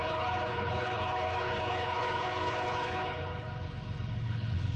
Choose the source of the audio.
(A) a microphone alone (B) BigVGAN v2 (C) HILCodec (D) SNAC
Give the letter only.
C